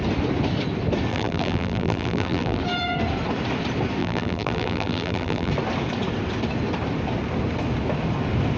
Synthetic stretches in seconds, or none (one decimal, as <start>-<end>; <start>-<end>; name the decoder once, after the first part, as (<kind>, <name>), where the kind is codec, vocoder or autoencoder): 1.1-2.6 (vocoder, BigVGAN v2); 4.0-5.5